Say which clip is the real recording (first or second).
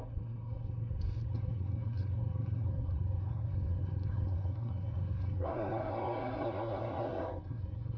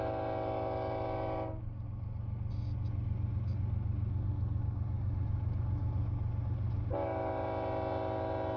second